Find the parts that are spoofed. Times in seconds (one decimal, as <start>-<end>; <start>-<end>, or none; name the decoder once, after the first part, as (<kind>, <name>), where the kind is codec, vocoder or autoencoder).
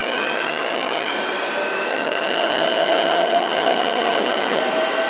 0.0-1.1 (vocoder, HiFi-GAN); 1.9-4.6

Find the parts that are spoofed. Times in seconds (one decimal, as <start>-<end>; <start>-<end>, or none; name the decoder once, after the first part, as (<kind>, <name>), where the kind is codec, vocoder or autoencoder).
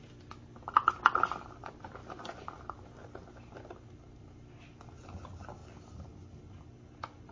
none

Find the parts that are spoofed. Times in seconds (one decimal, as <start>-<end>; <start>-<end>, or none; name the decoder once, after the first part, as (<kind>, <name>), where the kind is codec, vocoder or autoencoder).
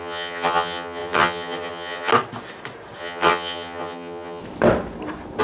0.0-2.1 (vocoder, HiFi-GAN); 3.0-4.4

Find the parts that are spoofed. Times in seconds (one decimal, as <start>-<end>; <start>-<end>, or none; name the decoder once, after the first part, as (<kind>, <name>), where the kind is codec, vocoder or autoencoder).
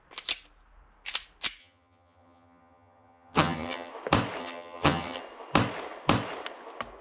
1.6-3.9 (vocoder, HiFi-GAN); 4.4-5.2